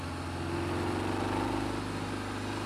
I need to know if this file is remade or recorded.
recorded